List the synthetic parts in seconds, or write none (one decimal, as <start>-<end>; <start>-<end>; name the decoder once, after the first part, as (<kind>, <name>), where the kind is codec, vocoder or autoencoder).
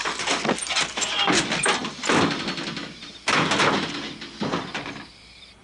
none